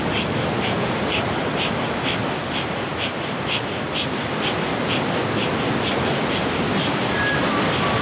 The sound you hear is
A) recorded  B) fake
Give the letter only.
B